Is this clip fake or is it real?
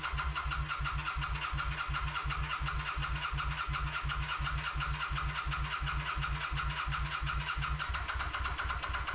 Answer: real